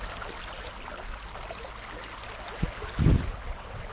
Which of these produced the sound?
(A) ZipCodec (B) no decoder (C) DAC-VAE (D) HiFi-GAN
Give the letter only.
B